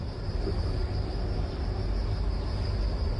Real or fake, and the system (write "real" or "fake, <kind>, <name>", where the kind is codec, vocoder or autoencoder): real